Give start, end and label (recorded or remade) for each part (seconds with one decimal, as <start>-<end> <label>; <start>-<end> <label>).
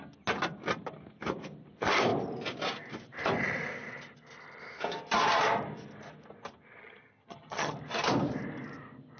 0.0-6.8 recorded; 6.8-7.7 remade; 7.7-9.2 recorded